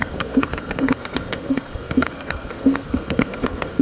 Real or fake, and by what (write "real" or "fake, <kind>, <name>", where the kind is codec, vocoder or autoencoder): fake, codec, SNAC